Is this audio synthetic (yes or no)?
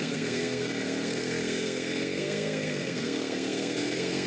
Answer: yes